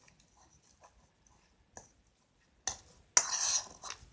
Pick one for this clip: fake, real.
real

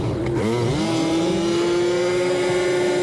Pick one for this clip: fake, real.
real